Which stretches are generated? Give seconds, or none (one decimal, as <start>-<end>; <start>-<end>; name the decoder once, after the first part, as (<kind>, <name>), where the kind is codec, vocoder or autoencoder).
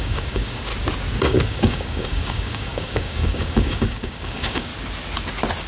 0.0-0.7 (codec, DAC); 1.2-4.7